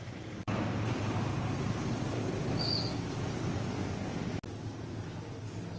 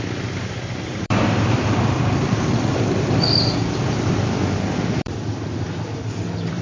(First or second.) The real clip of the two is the first